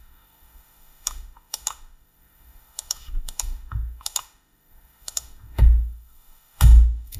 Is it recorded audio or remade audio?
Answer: remade